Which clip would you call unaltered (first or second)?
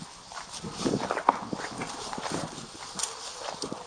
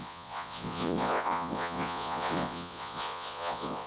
first